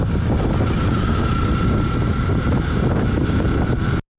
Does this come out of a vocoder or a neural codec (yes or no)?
no